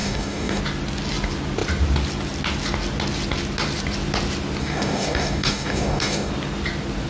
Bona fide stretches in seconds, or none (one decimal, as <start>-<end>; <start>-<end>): 0.6-4.6; 6.3-7.1